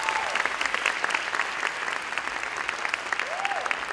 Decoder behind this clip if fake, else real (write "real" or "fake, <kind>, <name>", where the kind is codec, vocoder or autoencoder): real